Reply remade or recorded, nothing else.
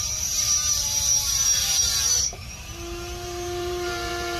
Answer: remade